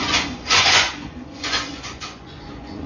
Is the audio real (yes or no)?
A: no